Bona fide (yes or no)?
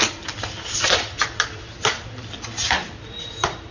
yes